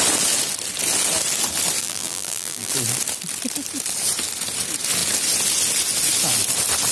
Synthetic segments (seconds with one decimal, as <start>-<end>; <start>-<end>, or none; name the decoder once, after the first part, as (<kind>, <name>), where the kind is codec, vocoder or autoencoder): 1.8-2.7 (vocoder, BigVGAN v2)